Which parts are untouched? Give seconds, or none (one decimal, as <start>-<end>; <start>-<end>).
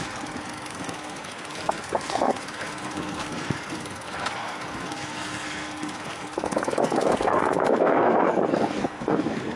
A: none